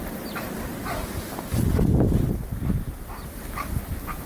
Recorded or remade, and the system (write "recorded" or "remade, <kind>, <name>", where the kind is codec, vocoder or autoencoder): recorded